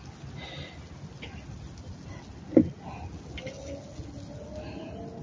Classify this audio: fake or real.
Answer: real